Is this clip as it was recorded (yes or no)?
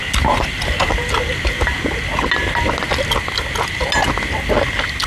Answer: yes